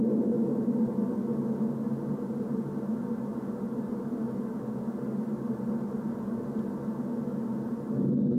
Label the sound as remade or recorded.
recorded